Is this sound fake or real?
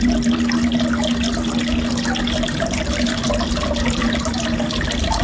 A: real